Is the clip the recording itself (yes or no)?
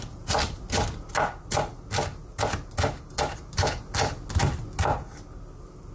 yes